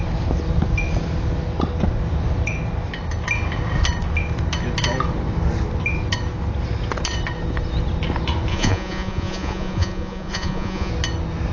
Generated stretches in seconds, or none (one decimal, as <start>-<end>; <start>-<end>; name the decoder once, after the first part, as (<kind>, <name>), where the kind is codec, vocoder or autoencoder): 8.5-10.9 (vocoder, Vocos)